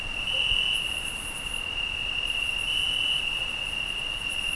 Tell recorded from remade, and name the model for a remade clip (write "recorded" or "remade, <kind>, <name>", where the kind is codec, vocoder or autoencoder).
recorded